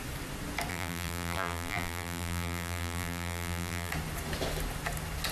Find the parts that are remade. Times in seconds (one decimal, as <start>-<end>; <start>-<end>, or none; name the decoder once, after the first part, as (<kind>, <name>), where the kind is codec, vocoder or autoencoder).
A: 0.7-3.9 (vocoder, BigVGAN v2)